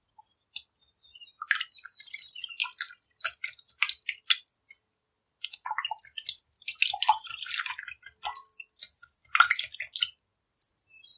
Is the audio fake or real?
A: real